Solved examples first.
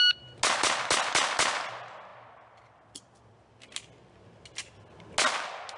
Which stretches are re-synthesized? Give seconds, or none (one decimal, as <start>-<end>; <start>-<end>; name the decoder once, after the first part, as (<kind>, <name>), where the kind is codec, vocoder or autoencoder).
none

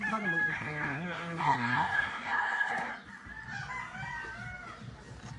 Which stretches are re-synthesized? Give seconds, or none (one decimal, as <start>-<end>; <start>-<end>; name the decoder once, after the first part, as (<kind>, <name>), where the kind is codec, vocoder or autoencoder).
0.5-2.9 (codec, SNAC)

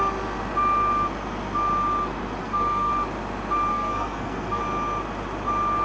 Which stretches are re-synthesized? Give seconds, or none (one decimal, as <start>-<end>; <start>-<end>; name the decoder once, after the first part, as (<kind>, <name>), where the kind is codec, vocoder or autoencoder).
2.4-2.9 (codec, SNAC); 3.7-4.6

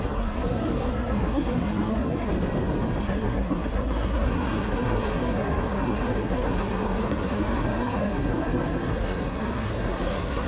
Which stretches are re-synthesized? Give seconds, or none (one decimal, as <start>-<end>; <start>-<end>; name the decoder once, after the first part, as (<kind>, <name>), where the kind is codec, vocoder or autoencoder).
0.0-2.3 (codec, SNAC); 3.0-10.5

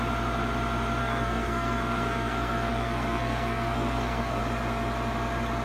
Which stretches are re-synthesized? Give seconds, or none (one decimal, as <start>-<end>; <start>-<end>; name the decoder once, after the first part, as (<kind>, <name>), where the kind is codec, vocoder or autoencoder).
1.0-4.4 (codec, SNAC)